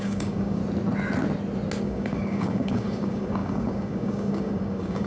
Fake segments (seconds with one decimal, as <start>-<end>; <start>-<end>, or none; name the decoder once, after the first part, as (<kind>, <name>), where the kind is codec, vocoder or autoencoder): 0.0-0.6 (codec, DAC); 1.8-5.1